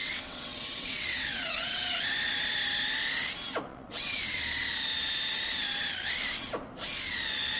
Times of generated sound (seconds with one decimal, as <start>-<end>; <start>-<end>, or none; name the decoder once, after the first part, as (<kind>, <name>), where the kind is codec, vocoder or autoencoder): 0.0-1.8 (vocoder, WaveNeXt); 3.7-4.4